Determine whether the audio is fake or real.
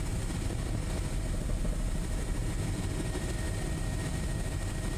fake